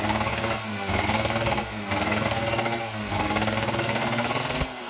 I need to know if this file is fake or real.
fake